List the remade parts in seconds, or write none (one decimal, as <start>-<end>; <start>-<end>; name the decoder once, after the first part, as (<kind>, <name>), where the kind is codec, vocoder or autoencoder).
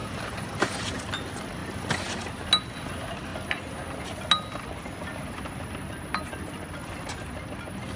0.0-1.1 (vocoder, BigVGAN v2)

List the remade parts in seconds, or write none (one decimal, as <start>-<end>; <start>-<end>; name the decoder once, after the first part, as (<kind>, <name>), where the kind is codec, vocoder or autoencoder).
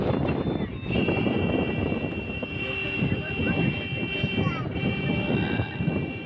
0.0-3.4 (vocoder, BigVGAN v2); 4.5-6.3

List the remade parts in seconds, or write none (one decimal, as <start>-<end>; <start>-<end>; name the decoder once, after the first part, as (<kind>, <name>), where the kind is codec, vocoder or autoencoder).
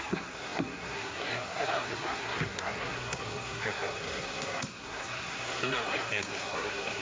0.0-7.0 (codec, SNAC)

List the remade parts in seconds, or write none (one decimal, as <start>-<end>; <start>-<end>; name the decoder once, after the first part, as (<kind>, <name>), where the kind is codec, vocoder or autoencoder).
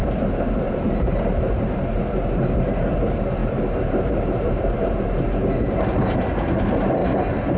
0.0-7.0 (vocoder, BigVGAN v2)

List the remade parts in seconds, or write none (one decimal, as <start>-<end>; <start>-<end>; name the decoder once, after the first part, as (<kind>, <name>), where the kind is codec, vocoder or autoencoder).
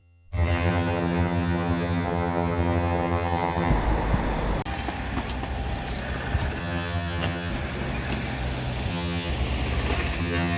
0.0-3.7 (vocoder, HiFi-GAN); 6.6-7.5; 8.9-9.3; 10.2-10.6